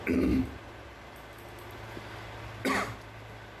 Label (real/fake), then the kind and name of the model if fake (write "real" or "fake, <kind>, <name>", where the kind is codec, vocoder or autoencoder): real